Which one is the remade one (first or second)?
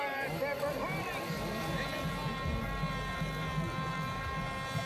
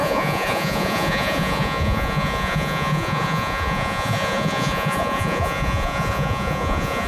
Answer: second